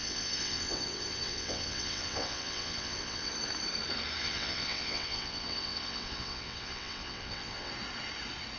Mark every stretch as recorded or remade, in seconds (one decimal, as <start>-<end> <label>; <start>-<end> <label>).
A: 0.0-3.3 remade; 3.3-4.2 recorded; 4.2-7.7 remade; 7.7-8.6 recorded